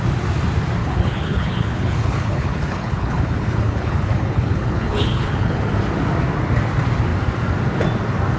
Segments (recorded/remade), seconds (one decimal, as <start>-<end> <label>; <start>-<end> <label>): 0.0-0.8 recorded; 0.8-5.7 remade; 5.7-8.4 recorded